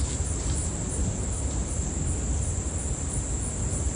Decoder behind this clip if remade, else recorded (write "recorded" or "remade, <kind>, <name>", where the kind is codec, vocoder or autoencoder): recorded